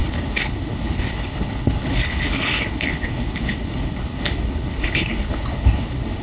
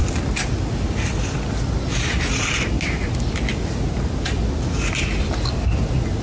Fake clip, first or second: first